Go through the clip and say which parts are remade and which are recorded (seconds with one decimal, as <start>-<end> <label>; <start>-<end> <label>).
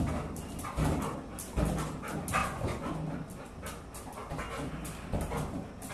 0.0-2.4 recorded; 2.4-2.9 remade; 2.9-5.9 recorded